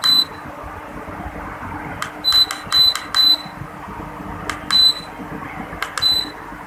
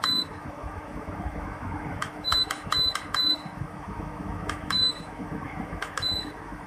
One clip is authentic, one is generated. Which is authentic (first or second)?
first